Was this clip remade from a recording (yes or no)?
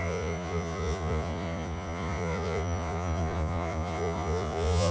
yes